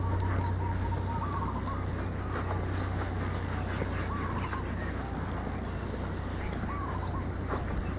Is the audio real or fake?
real